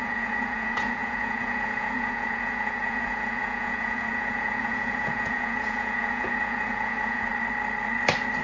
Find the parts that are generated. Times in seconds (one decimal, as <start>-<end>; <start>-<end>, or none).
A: 0.0-7.3